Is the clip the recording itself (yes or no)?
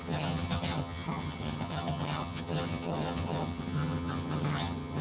no